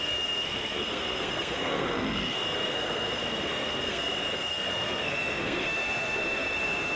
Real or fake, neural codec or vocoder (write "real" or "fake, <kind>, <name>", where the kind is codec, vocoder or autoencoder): fake, codec, SNAC